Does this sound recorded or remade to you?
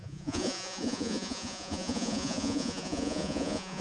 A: remade